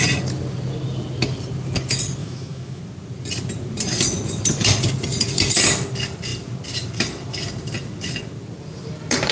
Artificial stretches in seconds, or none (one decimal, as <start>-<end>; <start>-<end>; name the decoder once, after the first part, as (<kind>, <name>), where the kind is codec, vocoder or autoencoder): 2.2-2.8 (autoencoder, DAC-VAE)